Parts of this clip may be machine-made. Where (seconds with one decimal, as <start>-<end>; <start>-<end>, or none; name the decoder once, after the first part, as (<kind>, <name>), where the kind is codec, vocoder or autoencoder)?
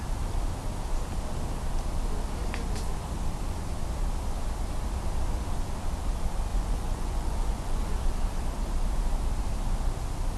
6.5-7.9 (vocoder, Vocos)